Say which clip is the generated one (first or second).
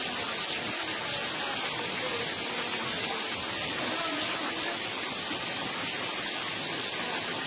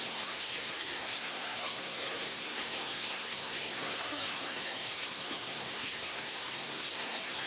second